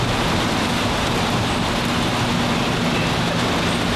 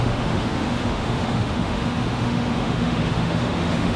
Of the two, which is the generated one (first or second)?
second